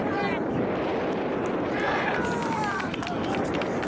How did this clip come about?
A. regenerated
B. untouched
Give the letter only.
B